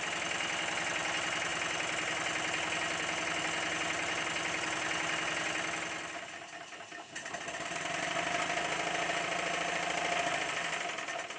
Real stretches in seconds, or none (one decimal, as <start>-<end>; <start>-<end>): 0.0-11.4